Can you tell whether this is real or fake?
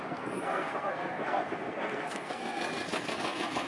fake